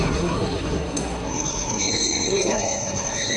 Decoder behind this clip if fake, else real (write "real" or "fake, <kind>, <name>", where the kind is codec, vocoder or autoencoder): fake, codec, SNAC